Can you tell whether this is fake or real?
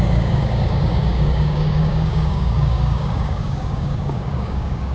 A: fake